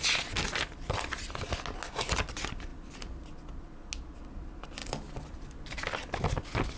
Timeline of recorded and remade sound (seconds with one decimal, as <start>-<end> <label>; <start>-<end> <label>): 0.0-6.8 recorded